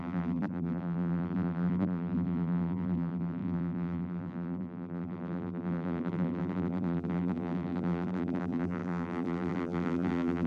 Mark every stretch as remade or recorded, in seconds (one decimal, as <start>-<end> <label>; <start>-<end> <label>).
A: 0.0-10.5 remade